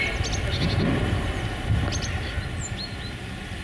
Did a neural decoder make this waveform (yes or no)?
no